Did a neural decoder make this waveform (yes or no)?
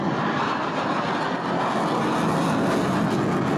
no